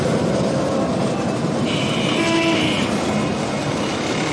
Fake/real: real